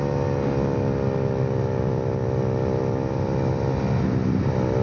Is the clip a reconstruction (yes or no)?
no